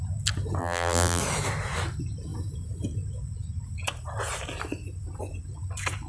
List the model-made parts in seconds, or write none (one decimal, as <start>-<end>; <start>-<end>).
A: 0.6-1.2